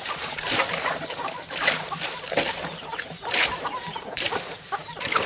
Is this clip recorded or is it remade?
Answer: remade